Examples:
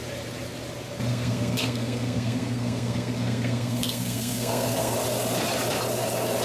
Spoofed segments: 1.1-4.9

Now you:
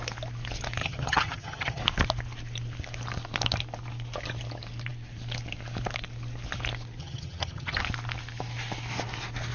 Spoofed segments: 0.8-1.8; 7.0-7.8

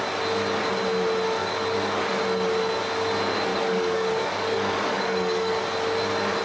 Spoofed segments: 1.4-2.2; 3.5-5.6

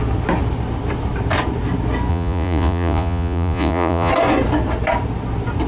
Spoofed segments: 2.1-4.1

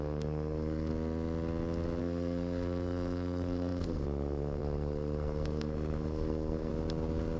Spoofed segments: 0.0-0.9; 2.0-6.7

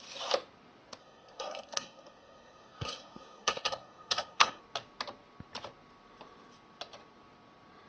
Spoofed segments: 1.0-4.6

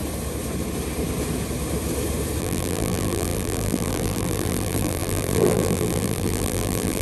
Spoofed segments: 2.4-7.0